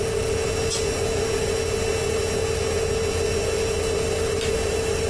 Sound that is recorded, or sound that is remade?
recorded